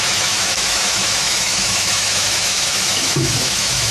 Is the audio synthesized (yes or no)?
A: yes